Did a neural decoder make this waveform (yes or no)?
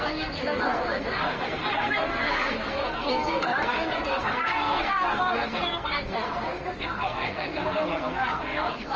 yes